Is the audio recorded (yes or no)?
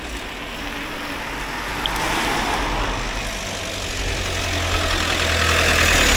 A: yes